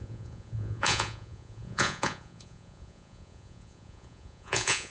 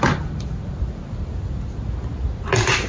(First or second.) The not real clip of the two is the first